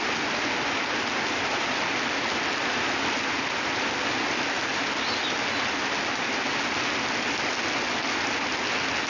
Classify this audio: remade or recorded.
recorded